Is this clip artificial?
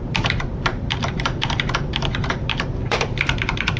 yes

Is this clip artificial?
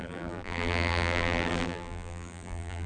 yes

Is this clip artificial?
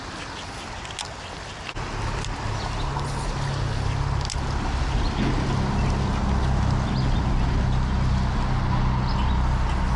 no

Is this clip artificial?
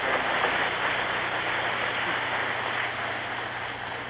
no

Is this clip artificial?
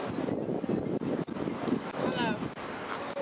no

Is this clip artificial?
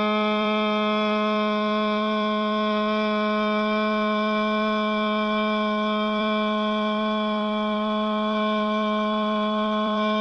yes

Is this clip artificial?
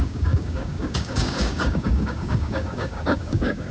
yes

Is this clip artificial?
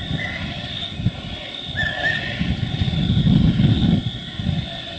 no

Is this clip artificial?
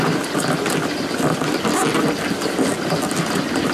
no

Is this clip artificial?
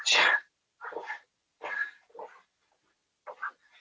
no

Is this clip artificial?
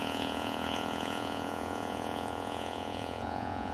yes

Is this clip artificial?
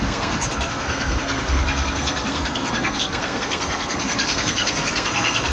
yes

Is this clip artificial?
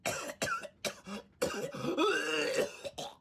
no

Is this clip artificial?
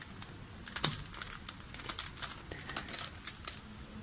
no